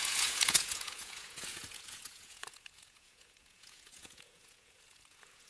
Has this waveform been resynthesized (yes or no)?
yes